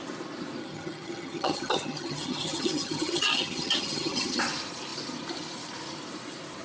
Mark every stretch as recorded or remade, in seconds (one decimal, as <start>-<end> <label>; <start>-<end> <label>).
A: 0.0-0.6 recorded; 0.6-4.4 remade; 4.4-6.6 recorded